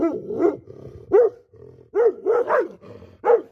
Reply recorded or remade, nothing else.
recorded